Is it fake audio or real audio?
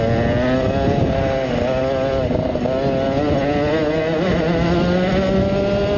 real